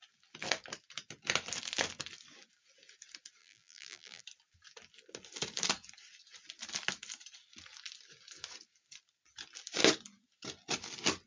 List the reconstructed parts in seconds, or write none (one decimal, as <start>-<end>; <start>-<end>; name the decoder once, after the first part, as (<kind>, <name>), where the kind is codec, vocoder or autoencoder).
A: 3.4-4.2 (vocoder, BigVGAN v2)